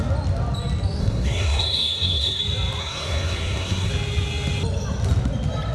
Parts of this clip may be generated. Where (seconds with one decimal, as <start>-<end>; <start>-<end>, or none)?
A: 1.0-2.4; 2.8-3.9